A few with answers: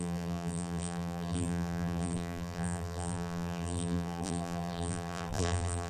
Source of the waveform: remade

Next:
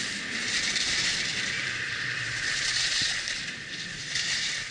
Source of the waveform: recorded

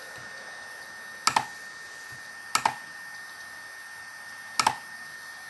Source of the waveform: recorded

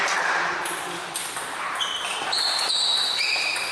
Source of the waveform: remade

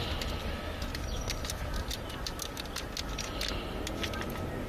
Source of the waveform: recorded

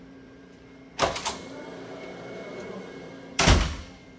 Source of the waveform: remade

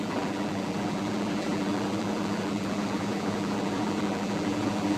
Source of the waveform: remade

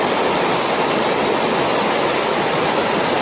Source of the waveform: recorded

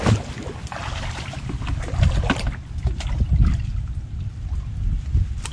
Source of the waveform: recorded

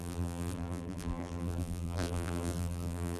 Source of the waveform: remade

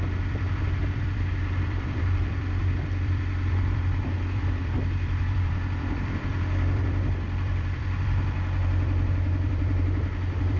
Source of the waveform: remade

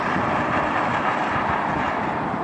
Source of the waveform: remade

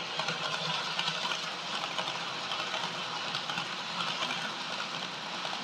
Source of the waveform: recorded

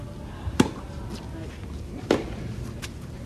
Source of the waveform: recorded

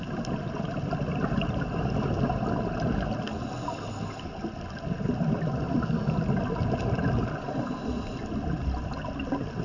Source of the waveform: recorded